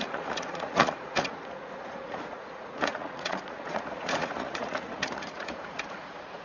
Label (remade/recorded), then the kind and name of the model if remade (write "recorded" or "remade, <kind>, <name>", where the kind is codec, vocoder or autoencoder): remade, vocoder, Vocos